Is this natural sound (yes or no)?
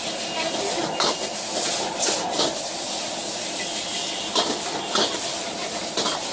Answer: yes